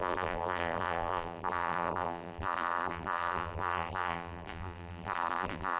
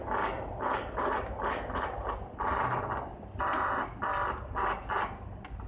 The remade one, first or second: first